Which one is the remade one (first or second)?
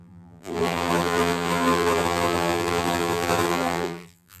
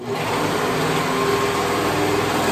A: first